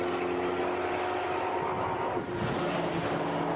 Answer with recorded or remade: recorded